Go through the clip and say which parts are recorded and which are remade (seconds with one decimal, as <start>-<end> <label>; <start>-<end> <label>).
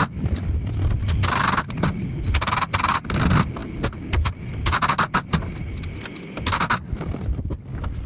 0.0-8.1 recorded